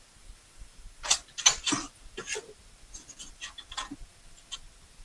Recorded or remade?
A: recorded